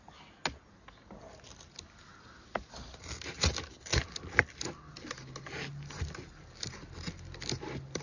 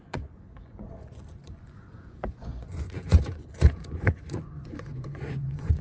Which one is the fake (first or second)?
second